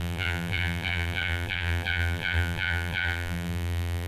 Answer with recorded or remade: remade